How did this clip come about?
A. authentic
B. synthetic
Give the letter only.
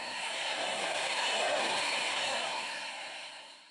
B